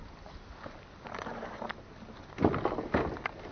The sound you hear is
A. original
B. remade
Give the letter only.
A